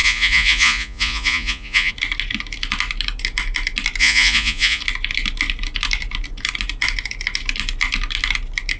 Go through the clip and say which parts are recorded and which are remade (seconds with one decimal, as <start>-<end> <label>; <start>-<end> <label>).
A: 0.0-1.9 remade; 1.9-4.0 recorded; 4.0-4.8 remade; 4.8-8.8 recorded